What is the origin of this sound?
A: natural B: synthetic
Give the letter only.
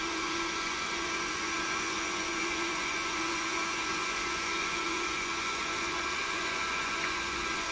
B